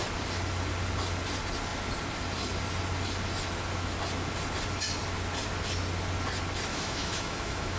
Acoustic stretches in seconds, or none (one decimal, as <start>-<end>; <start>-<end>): 0.0-6.7